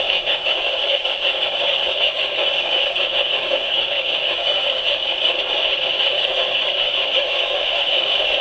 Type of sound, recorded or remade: remade